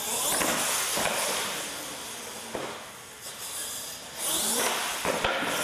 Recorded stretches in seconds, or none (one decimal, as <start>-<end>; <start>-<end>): 0.0-5.6